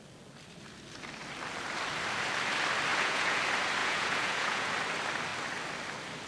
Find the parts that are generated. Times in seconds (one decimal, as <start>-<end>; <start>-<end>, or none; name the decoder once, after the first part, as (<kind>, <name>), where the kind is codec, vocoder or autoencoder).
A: 2.9-3.4 (vocoder, Vocos); 3.8-4.7